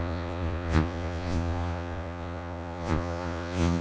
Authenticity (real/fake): fake